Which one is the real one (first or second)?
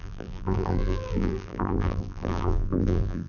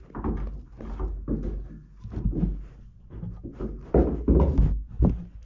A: second